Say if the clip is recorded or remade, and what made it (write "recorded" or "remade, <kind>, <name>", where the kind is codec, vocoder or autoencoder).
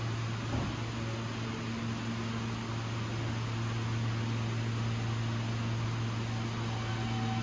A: recorded